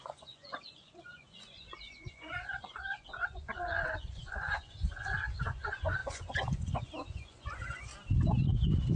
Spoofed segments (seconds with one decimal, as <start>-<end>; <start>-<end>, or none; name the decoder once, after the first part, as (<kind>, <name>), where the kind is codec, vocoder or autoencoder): 0.0-7.9 (vocoder, Vocos)